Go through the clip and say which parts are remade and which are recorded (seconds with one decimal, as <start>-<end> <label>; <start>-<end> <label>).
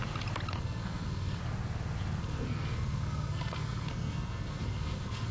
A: 0.0-0.6 recorded; 0.6-1.4 remade; 1.4-2.2 recorded; 2.2-5.3 remade